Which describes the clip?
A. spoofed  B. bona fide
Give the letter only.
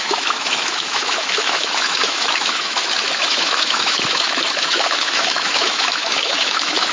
A